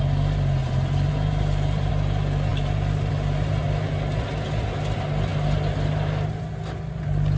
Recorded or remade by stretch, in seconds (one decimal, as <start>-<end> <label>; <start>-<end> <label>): 0.0-0.6 recorded; 0.6-1.9 remade; 1.9-7.4 recorded